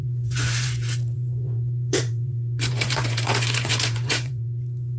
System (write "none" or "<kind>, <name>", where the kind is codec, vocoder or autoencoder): vocoder, Vocos